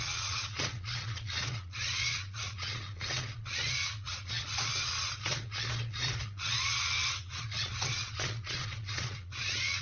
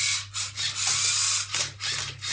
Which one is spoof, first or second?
first